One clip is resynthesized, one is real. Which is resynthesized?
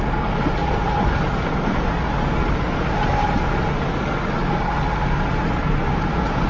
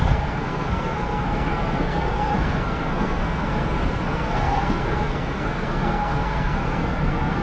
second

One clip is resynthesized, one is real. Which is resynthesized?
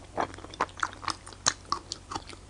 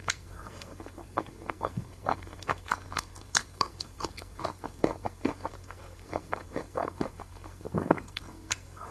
second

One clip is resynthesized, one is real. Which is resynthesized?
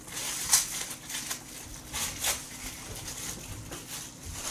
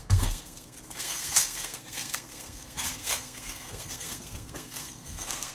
second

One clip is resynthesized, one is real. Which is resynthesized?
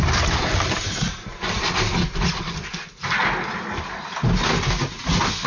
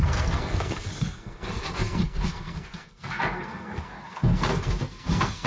second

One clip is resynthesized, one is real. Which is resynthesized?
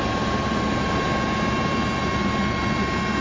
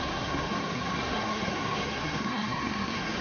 second